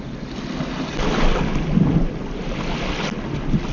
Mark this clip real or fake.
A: real